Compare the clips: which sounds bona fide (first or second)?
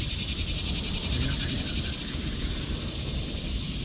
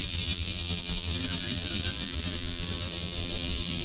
first